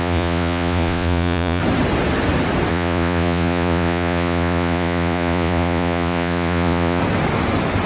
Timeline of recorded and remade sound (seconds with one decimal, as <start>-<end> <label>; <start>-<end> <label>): 0.0-1.6 remade; 1.6-2.7 recorded; 2.7-7.0 remade; 7.0-7.9 recorded